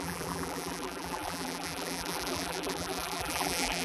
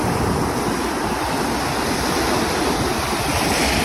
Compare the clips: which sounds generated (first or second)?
first